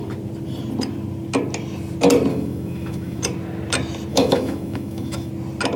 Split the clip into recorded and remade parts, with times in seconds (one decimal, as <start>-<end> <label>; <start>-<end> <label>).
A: 0.0-2.3 recorded; 2.3-3.2 remade; 3.2-4.1 recorded; 4.1-5.3 remade; 5.3-5.8 recorded